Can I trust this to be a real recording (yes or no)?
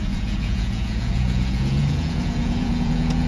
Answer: no